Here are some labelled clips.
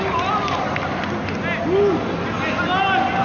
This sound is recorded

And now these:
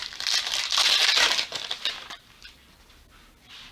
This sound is recorded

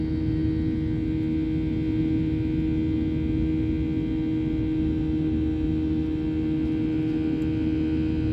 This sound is recorded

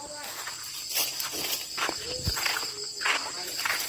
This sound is recorded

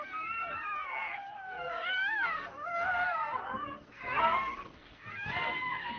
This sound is remade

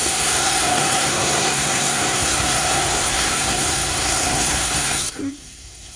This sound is remade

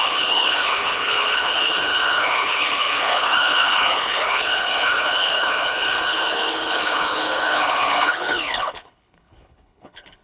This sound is remade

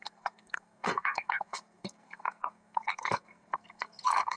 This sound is remade